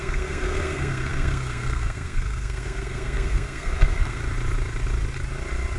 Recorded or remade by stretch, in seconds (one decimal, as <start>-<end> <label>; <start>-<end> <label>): 0.0-4.2 remade; 4.2-5.8 recorded